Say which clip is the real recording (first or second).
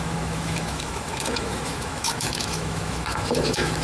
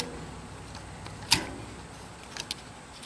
second